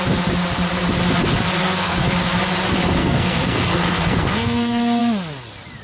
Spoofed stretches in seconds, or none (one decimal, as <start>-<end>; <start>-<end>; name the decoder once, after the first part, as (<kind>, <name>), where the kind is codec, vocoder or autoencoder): 1.6-2.1 (codec, SNAC); 3.0-5.0